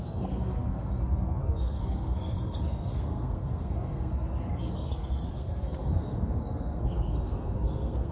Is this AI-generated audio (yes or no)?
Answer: yes